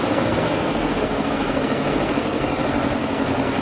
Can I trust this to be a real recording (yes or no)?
no